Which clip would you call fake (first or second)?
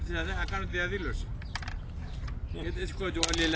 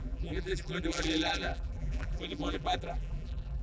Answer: second